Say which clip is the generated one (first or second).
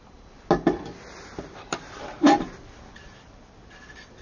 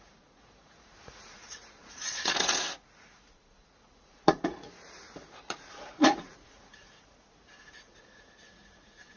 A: second